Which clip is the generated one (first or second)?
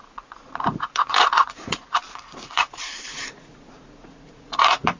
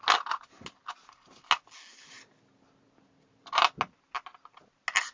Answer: first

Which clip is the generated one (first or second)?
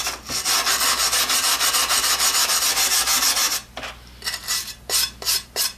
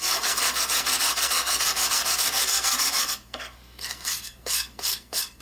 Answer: second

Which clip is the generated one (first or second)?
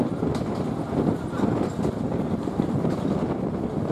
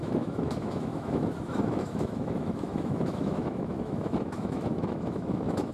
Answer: second